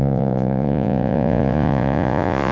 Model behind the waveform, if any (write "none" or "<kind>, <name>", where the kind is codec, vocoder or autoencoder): vocoder, Vocos